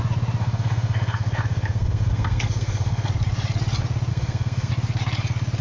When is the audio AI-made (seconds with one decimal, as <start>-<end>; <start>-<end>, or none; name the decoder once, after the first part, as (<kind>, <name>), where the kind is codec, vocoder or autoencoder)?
0.4-3.1 (codec, SNAC); 4.1-4.7

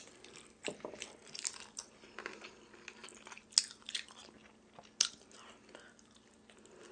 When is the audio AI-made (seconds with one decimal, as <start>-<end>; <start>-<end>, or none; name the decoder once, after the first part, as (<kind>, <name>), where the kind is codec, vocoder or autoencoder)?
none

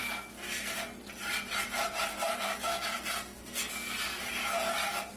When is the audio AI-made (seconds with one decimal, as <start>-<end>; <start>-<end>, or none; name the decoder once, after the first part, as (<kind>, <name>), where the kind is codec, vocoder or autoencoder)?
0.0-0.7 (codec, SNAC); 2.1-4.2

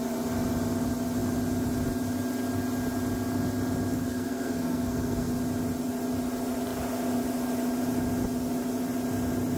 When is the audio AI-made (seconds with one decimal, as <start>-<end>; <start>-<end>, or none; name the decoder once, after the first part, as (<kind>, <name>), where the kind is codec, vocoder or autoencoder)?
3.9-5.3 (codec, SNAC)

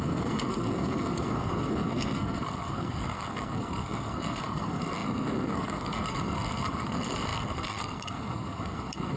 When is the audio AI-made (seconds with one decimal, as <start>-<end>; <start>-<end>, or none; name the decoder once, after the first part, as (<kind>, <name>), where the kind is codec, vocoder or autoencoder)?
0.0-9.2 (codec, SNAC)